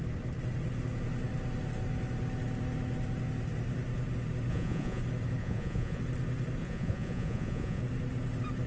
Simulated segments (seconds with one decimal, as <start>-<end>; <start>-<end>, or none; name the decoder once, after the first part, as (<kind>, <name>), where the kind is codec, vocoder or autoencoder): 4.5-5.0 (vocoder, Vocos); 5.4-6.0; 6.6-7.8

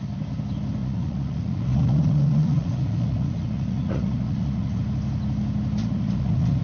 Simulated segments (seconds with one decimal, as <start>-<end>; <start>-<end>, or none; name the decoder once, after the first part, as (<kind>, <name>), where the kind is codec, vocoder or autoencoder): 0.8-4.8 (vocoder, Vocos); 5.8-6.6

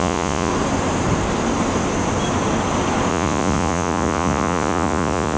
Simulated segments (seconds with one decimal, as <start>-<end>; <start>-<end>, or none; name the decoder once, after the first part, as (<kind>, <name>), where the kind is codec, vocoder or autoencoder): 0.0-0.5 (vocoder, Vocos); 3.1-5.4

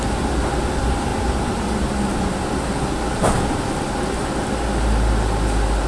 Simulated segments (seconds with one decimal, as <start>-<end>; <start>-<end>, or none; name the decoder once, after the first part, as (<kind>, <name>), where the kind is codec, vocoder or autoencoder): none

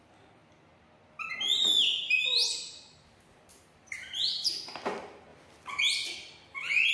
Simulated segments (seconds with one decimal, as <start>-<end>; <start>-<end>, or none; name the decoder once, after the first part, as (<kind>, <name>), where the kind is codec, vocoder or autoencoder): none

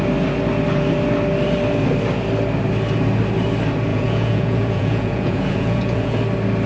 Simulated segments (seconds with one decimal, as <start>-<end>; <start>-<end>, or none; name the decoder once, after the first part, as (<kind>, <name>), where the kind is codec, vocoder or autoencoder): 3.9-6.2 (vocoder, Vocos)

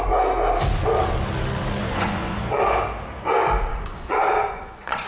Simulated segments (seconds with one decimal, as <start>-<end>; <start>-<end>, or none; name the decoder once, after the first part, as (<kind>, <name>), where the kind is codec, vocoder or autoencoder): 1.8-2.6 (vocoder, Vocos); 3.7-5.1

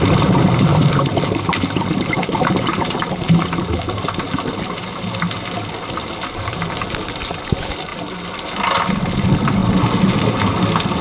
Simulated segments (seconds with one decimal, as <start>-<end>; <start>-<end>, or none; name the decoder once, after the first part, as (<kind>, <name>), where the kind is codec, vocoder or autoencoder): none